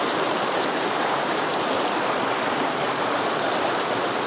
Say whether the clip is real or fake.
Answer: real